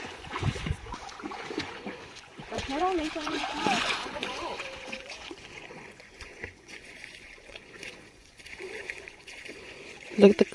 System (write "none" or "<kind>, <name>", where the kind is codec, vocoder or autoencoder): vocoder, Vocos